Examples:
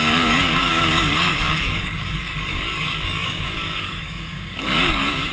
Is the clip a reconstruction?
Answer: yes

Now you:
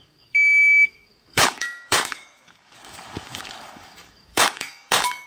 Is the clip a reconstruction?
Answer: yes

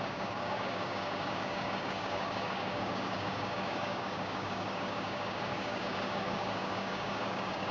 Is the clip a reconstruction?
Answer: yes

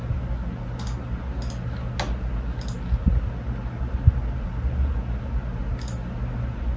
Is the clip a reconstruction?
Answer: no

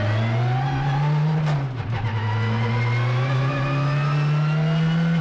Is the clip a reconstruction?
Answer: no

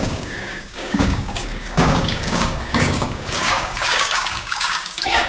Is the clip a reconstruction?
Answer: yes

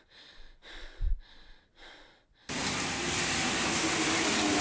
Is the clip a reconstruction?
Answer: no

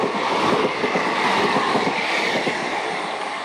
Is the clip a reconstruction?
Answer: yes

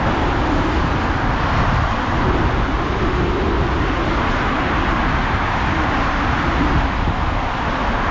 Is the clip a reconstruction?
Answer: no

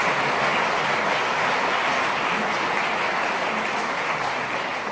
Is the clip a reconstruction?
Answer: no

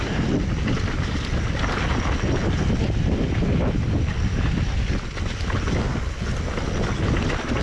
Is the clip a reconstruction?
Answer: no